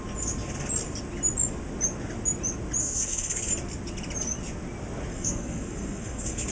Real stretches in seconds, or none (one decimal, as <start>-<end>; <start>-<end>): 0.0-2.8; 3.5-5.1